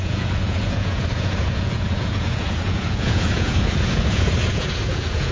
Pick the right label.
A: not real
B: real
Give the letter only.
A